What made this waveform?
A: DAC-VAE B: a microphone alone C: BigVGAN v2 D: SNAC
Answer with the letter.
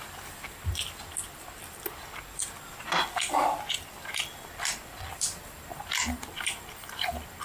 C